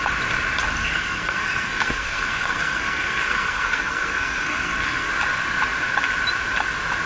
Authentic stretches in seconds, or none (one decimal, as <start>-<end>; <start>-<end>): 0.0-0.8; 5.1-7.1